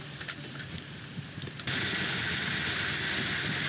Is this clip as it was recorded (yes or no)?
yes